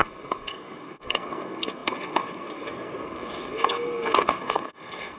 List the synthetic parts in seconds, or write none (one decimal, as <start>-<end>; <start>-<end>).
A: 0.0-5.2